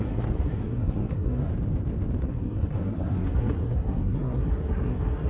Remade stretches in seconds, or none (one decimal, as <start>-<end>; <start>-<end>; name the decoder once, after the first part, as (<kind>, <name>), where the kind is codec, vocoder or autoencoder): 0.0-1.5 (codec, SNAC); 2.2-5.3